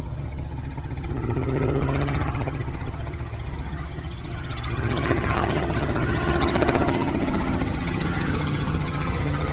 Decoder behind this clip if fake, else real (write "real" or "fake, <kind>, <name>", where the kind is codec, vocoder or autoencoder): fake, vocoder, HiFi-GAN